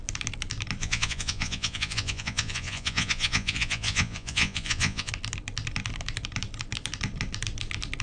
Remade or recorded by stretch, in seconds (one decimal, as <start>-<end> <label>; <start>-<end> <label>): 0.0-0.8 recorded; 0.8-5.1 remade; 5.1-8.0 recorded